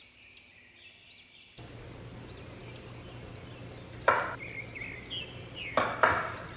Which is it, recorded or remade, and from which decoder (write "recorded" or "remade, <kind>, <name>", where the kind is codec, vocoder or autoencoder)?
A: recorded